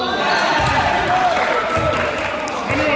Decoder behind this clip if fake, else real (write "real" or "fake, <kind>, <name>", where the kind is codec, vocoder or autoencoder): real